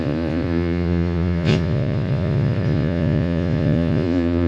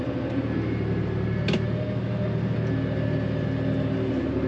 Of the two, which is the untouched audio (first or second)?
second